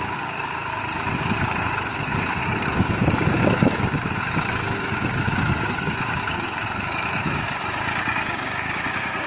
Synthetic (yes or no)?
yes